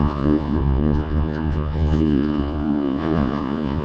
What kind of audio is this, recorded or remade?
remade